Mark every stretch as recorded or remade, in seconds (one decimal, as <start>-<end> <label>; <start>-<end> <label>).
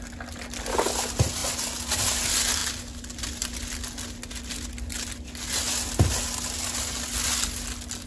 0.0-8.1 recorded